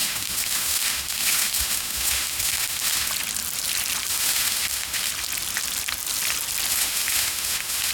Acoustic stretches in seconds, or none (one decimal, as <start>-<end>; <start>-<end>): 3.1-4.1; 5.1-6.7